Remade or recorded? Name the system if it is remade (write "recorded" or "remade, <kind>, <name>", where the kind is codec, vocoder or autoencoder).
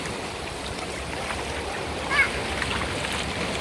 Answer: recorded